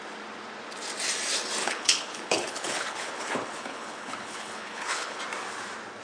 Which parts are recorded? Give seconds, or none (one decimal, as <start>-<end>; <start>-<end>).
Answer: 0.0-1.6; 5.2-6.0